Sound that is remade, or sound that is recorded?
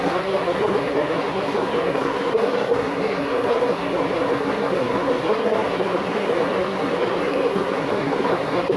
remade